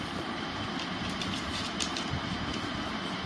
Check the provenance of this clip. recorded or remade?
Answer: recorded